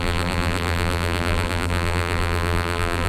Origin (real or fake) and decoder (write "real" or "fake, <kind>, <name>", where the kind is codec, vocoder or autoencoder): fake, vocoder, BigVGAN v2